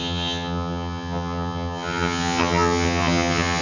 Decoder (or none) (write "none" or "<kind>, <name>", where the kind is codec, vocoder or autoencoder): vocoder, HiFi-GAN